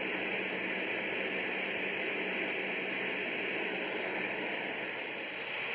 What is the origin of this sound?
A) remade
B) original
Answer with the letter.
B